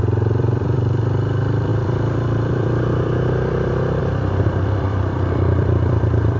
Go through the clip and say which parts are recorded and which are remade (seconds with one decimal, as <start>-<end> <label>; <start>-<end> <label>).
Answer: 0.0-6.4 remade